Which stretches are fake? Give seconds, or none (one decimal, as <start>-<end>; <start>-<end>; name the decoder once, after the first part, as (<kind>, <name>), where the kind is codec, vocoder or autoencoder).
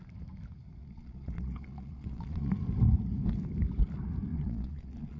0.8-2.5 (vocoder, Vocos); 4.3-5.2